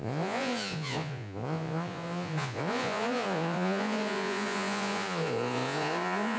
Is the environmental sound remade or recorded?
remade